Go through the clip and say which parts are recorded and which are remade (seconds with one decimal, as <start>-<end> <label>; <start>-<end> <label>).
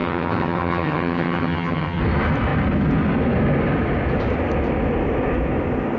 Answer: 0.0-2.0 remade; 2.0-6.0 recorded